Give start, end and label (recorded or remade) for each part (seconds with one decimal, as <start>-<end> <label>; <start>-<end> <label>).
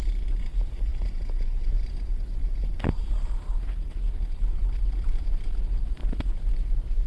0.0-0.9 recorded; 0.9-1.7 remade; 1.7-7.1 recorded